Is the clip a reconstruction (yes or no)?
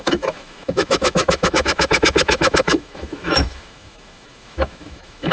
yes